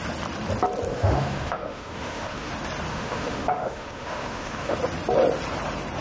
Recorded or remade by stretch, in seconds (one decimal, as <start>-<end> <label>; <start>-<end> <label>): 0.0-0.9 recorded; 0.9-2.5 remade; 2.5-2.9 recorded; 2.9-4.8 remade; 4.8-6.0 recorded